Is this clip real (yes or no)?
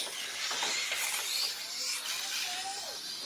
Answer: yes